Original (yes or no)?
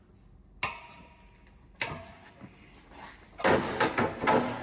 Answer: yes